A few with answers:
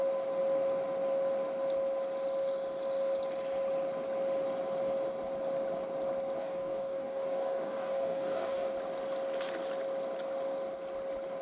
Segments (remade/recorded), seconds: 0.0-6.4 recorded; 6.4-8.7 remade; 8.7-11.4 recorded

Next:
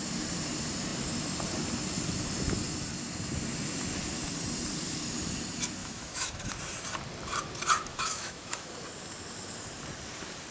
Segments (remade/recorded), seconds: 0.0-5.8 recorded; 5.8-6.4 remade; 6.4-7.9 recorded; 7.9-8.7 remade; 8.7-10.5 recorded